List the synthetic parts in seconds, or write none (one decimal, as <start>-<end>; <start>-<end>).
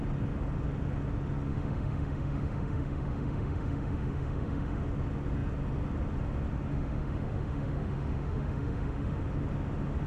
1.5-4.8; 6.7-9.2